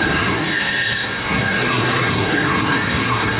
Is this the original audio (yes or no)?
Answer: no